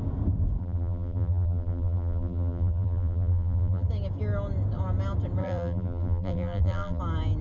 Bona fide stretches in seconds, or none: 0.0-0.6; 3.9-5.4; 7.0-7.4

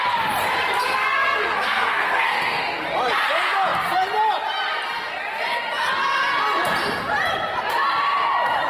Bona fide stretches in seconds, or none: 0.0-0.8; 2.6-8.7

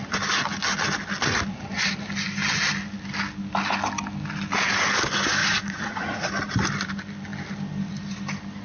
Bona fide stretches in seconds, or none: 0.0-5.4; 6.3-8.6

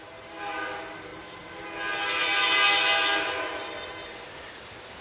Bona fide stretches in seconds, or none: 0.0-5.0